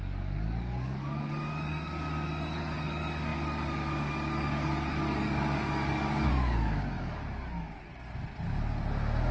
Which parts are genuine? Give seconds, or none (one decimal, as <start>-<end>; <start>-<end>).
7.9-9.3